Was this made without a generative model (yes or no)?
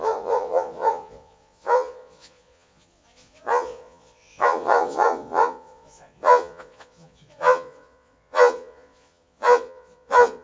no